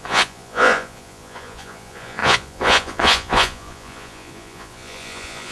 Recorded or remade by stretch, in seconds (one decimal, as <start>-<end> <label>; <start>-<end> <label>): 0.0-5.5 remade